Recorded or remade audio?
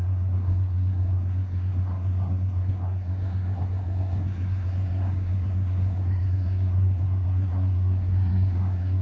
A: remade